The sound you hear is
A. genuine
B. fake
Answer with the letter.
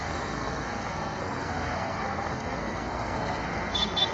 B